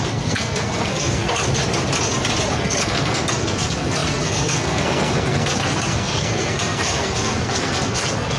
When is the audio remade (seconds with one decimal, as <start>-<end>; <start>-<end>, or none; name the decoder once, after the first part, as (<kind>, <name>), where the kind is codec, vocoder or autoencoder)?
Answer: 0.0-1.4 (codec, SNAC); 2.5-8.4